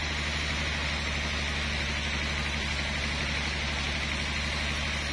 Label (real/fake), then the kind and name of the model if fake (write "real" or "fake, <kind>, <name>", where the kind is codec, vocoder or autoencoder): real